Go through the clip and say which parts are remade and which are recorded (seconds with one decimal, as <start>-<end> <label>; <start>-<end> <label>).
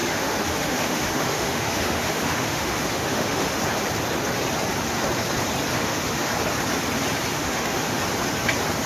0.0-3.6 remade; 3.6-5.7 recorded; 5.7-6.3 remade; 6.3-7.3 recorded; 7.3-8.0 remade; 8.0-8.9 recorded